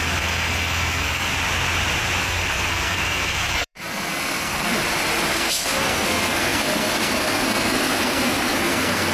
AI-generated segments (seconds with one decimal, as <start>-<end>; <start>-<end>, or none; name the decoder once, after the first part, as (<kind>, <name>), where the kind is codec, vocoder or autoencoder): 0.0-1.3 (codec, SNAC); 2.2-4.7; 5.3-9.1